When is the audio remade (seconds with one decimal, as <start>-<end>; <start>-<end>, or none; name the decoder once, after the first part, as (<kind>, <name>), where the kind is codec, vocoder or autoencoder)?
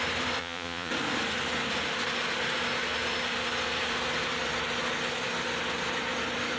0.4-0.9 (vocoder, Vocos)